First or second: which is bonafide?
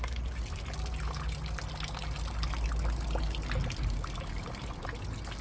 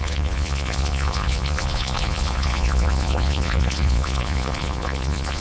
first